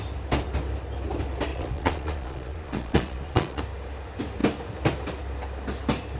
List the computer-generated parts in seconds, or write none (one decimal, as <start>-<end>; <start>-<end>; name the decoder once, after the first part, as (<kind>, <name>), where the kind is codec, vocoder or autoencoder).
1.5-3.6 (vocoder, Vocos)